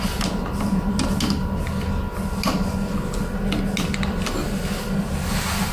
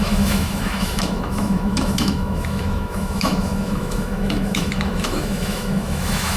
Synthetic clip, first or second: second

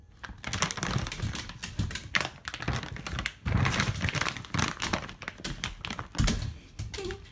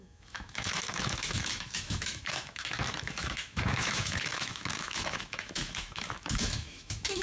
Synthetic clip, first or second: second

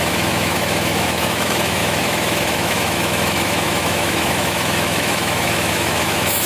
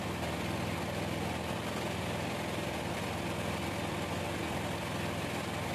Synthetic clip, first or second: first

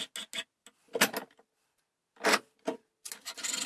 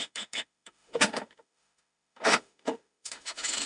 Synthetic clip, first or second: second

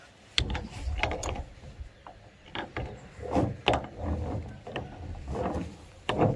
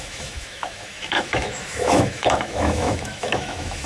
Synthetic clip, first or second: second